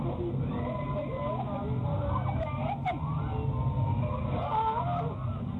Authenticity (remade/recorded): recorded